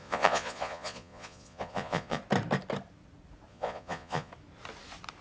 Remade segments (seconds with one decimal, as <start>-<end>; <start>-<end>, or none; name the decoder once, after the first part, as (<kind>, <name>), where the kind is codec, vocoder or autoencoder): 0.0-2.2 (vocoder, Vocos); 3.5-4.3